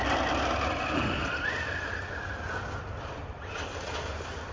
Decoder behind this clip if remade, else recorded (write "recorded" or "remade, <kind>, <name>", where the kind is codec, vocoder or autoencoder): recorded